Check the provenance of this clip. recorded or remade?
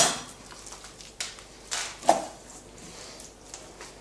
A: recorded